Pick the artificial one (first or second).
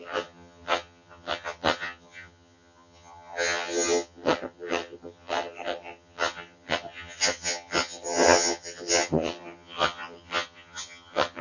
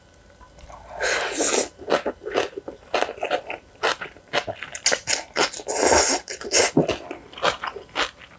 first